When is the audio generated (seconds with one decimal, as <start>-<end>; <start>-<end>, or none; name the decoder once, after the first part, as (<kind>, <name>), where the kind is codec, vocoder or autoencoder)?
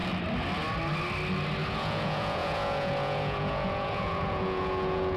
1.7-5.2 (vocoder, Vocos)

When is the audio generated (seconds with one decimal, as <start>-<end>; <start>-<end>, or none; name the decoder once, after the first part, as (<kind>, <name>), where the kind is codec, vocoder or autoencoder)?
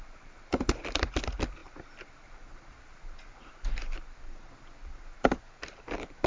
none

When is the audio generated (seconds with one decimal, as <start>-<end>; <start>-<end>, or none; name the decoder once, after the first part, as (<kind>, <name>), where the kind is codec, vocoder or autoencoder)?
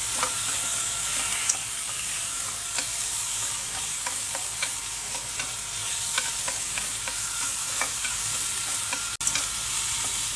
0.4-5.3 (codec, DAC); 5.8-8.2